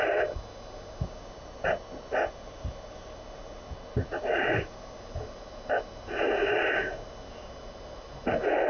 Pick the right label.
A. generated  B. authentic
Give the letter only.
B